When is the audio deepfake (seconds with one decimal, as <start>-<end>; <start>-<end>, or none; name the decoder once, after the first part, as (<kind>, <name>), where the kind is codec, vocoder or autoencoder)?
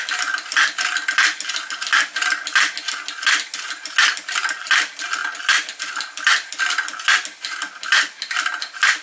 none